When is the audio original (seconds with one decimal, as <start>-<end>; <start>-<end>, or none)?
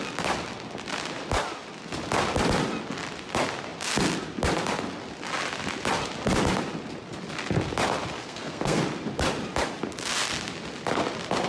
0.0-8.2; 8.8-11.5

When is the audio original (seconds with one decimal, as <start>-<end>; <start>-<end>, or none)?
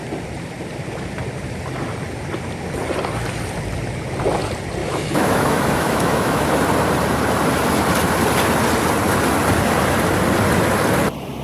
0.0-4.8; 6.5-11.4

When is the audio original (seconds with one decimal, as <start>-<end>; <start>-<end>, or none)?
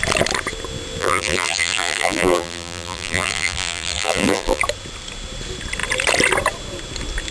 0.0-1.0; 4.6-7.3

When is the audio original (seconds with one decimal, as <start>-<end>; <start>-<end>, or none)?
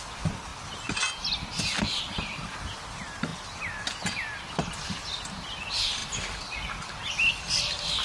0.0-8.0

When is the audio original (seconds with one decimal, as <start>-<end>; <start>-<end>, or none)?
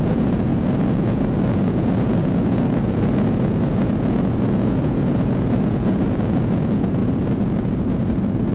none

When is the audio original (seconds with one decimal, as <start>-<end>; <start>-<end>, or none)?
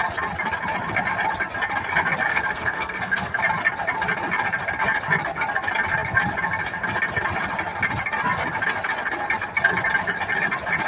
0.0-2.3; 3.4-10.9